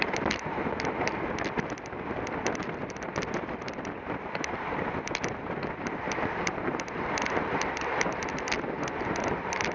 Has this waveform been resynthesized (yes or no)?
no